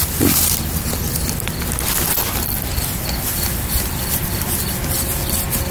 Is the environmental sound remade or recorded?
recorded